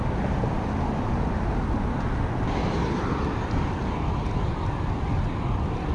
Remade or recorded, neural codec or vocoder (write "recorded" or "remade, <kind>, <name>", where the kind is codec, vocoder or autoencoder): recorded